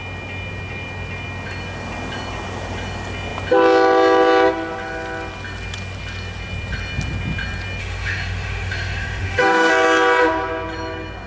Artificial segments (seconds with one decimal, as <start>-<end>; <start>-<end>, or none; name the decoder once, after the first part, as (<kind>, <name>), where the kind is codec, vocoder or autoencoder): 7.8-9.7 (autoencoder, DAC-VAE)